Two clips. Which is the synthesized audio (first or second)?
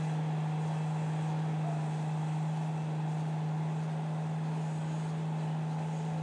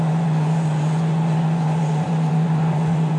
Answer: second